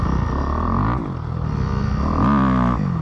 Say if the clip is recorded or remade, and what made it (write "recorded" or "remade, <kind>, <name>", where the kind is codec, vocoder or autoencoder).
recorded